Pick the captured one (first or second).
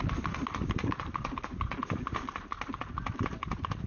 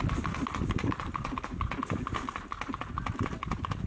second